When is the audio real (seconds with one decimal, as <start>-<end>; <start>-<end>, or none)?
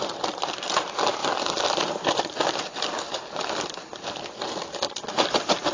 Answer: 0.0-5.7